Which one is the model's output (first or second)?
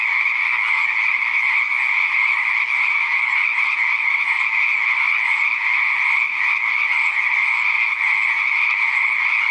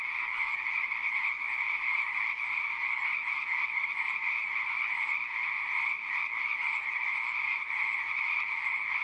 second